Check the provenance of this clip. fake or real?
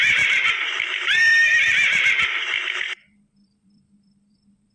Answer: fake